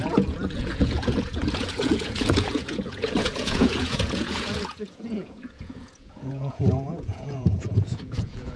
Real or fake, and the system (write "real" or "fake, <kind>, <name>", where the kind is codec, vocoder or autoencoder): fake, vocoder, Vocos